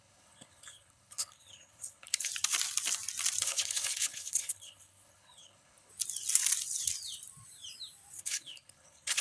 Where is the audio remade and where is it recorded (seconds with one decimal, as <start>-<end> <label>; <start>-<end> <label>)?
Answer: 0.0-2.3 remade; 2.3-3.4 recorded; 3.4-5.9 remade; 5.9-8.2 recorded; 8.2-9.2 remade